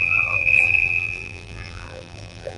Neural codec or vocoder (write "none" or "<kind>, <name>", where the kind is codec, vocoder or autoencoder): vocoder, BigVGAN v2